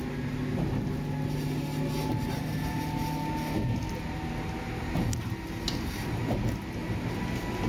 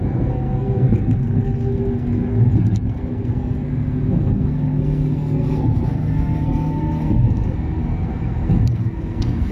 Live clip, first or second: first